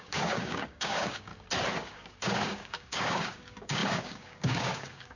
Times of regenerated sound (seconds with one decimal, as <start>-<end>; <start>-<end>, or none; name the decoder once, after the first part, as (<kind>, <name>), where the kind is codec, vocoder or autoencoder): 0.0-1.3 (codec, DAC); 1.8-5.2